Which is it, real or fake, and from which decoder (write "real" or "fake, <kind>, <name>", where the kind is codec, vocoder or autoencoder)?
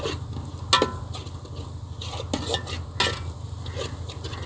real